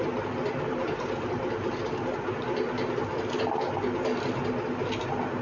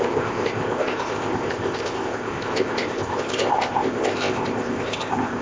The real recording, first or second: first